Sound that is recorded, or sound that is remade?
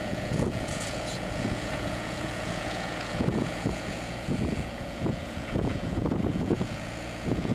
remade